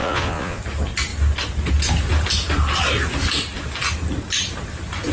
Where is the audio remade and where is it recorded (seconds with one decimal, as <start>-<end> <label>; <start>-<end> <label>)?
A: 0.0-0.6 remade; 0.6-5.1 recorded